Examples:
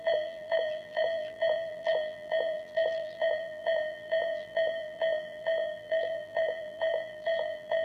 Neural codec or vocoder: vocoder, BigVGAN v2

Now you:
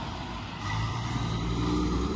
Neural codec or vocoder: vocoder, BigVGAN v2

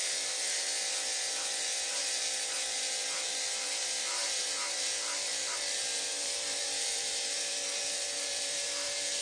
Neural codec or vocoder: vocoder, BigVGAN v2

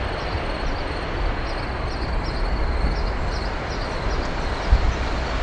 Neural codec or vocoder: none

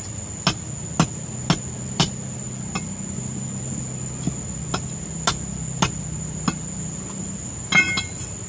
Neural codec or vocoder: none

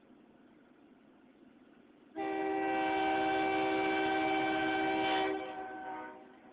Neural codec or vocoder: none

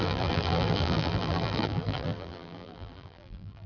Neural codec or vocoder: vocoder, BigVGAN v2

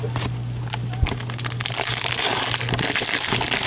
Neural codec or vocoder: none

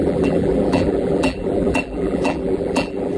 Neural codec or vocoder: vocoder, BigVGAN v2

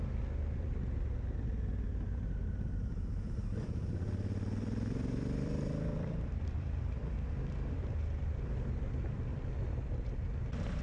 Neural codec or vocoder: vocoder, BigVGAN v2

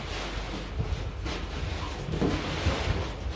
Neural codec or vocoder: none